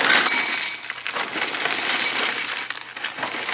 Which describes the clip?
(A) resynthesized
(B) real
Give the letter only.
B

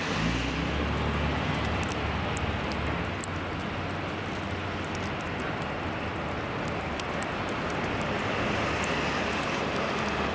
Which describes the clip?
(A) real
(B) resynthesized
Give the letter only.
A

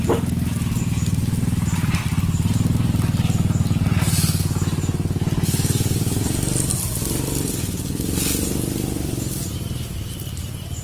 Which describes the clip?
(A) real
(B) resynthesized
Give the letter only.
A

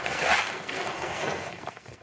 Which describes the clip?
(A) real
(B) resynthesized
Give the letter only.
B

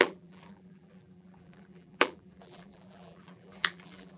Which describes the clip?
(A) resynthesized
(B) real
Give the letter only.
A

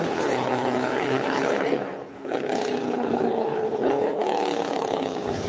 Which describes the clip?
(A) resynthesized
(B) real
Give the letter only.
A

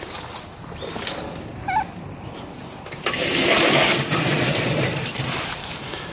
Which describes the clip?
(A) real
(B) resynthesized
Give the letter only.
A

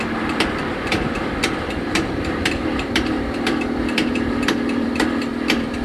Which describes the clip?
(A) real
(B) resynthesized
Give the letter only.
B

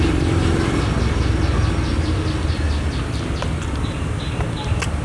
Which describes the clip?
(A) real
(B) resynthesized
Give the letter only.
A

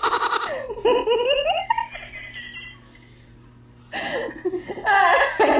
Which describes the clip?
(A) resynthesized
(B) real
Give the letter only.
B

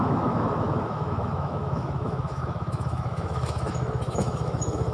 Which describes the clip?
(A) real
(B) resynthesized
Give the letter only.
B